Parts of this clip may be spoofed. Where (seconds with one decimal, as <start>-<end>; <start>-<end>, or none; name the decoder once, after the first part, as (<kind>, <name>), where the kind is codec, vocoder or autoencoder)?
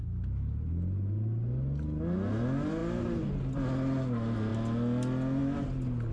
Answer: none